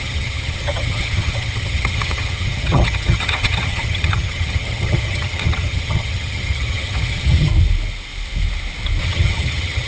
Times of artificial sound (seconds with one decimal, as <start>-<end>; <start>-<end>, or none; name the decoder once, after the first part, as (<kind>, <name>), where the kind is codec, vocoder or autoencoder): 0.0-7.5 (vocoder, HiFi-GAN); 9.0-9.9